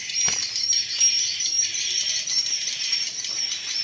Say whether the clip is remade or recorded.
recorded